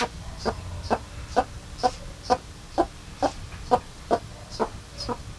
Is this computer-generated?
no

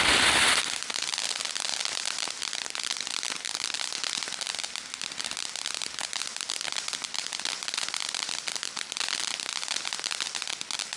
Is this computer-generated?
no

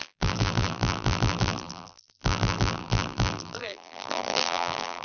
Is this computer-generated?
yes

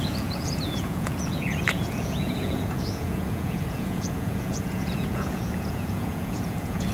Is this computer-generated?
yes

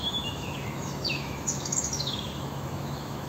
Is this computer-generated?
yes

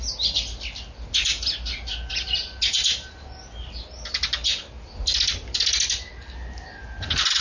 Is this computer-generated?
no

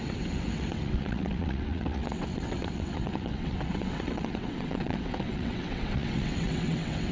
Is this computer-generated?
yes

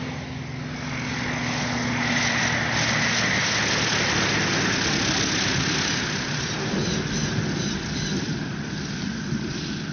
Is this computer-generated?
no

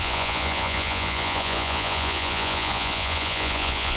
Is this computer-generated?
yes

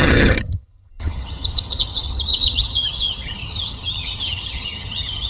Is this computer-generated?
yes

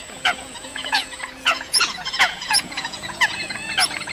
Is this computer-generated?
yes